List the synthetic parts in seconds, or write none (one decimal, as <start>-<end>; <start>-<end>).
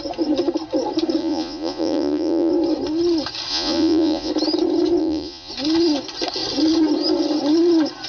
1.2-2.5; 3.5-4.3; 5.0-5.5